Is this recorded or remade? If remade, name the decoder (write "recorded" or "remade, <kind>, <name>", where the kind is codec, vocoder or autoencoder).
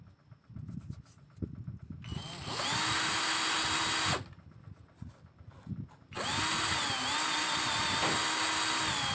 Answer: recorded